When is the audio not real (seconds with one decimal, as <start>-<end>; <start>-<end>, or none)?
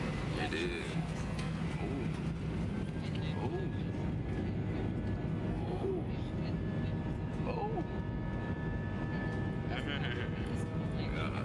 0.8-1.6; 5.5-6.1